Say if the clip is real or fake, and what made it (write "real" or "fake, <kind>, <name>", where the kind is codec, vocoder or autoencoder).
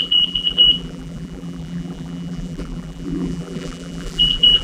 fake, vocoder, BigVGAN v2